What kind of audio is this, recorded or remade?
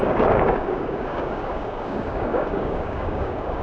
remade